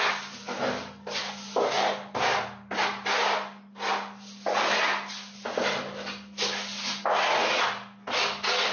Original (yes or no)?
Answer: yes